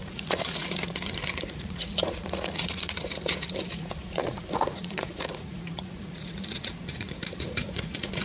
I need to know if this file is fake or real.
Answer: fake